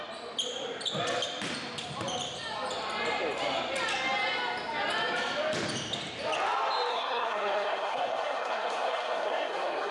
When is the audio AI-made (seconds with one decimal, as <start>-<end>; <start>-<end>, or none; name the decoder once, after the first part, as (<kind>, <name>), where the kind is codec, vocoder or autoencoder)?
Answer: 6.9-9.9 (codec, SNAC)